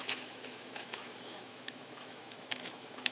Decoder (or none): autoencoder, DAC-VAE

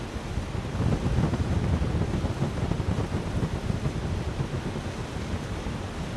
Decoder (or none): none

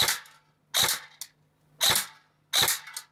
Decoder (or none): none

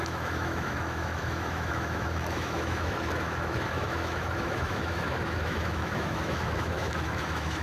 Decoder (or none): autoencoder, DAC-VAE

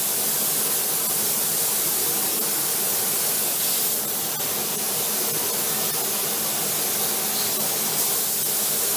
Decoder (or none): none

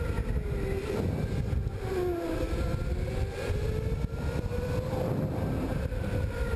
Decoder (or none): none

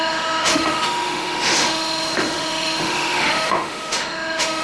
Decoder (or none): autoencoder, DAC-VAE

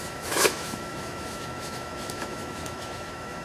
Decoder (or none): autoencoder, DAC-VAE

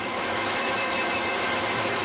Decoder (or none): autoencoder, DAC-VAE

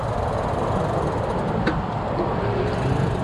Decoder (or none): none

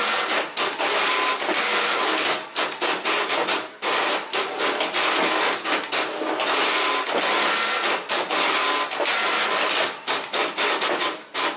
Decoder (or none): none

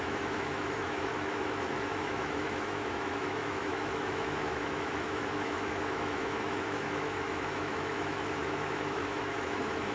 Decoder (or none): autoencoder, DAC-VAE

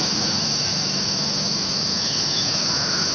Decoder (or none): autoencoder, DAC-VAE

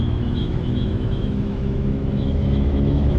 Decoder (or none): autoencoder, DAC-VAE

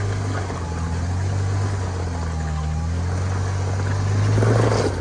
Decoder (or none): none